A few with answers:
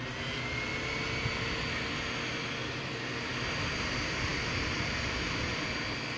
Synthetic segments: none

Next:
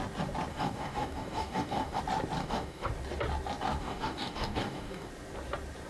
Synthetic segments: 0.5-2.0 (codec, DAC); 2.4-2.9; 3.8-5.1

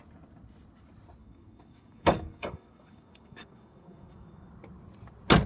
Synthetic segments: 1.2-4.5 (codec, DAC)

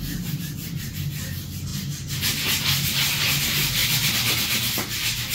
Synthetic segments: none

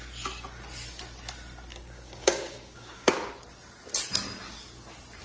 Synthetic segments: 1.7-3.3 (codec, DAC)

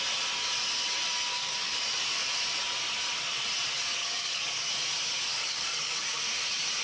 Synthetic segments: 1.3-1.8 (codec, DAC); 4.0-4.7; 5.3-6.2

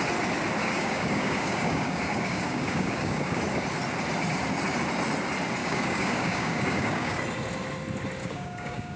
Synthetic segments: 0.6-3.4 (codec, DAC); 5.6-7.2; 8.2-9.0